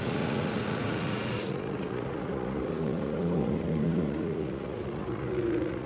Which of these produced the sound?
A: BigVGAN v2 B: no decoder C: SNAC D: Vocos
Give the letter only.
D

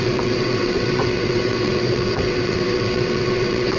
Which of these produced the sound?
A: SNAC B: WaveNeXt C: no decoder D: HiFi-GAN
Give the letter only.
B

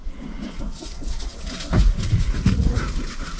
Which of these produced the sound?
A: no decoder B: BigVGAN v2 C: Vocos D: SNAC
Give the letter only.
C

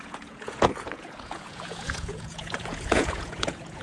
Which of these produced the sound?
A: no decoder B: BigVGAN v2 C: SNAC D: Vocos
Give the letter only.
D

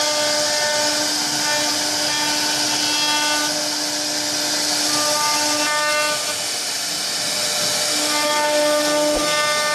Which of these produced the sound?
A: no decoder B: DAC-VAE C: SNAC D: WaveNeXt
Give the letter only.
A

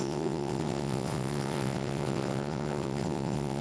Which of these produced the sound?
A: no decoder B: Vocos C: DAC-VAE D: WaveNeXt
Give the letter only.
D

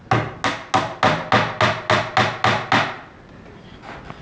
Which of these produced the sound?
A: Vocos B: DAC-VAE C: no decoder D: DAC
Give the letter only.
C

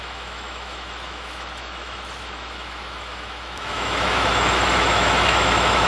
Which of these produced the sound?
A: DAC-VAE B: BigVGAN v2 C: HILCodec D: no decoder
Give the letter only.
A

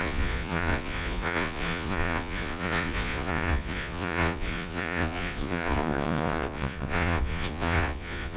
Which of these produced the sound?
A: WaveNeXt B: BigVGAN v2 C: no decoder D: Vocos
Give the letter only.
D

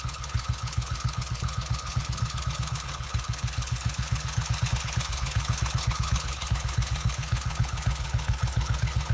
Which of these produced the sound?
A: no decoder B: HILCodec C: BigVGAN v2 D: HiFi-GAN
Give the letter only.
B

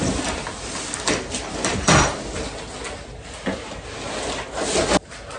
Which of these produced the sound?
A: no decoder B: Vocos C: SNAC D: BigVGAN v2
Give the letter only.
A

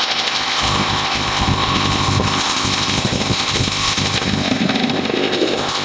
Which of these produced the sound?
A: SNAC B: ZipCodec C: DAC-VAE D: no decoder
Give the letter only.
B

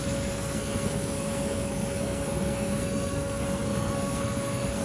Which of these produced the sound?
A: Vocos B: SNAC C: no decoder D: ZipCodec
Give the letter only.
B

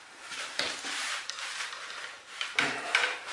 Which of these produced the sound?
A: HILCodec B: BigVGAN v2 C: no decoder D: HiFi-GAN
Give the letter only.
B